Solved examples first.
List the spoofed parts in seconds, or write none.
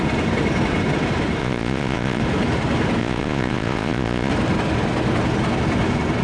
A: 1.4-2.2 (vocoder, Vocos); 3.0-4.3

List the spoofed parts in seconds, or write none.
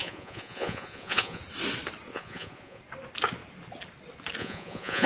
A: 0.0-1.4 (vocoder, Vocos); 2.1-2.8; 4.4-5.1